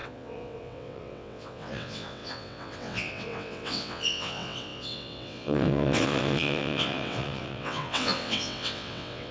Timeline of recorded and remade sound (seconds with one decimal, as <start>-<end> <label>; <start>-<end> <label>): 0.0-9.3 remade